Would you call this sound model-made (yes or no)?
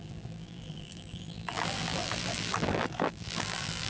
yes